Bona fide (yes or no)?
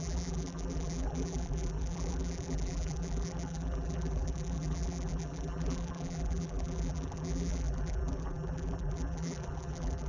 no